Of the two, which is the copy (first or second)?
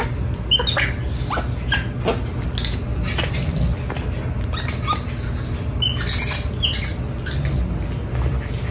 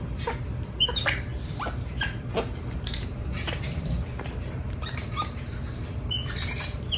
second